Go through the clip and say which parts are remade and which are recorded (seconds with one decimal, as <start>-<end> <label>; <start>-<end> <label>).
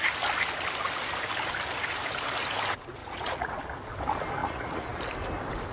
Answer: 0.0-3.0 recorded; 3.0-3.6 remade; 3.6-4.4 recorded; 4.4-5.0 remade; 5.0-5.7 recorded